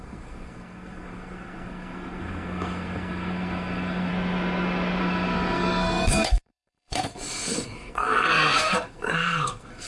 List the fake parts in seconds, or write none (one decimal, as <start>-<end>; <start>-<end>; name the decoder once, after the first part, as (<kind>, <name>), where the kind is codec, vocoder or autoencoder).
0.0-4.1 (codec, SNAC); 5.0-9.9